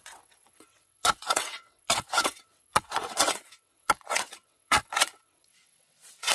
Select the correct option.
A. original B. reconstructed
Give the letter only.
B